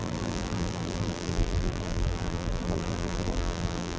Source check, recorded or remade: remade